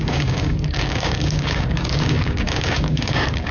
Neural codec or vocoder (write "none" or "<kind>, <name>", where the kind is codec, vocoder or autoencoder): codec, DAC